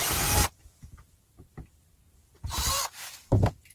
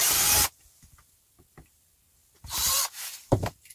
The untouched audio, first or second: first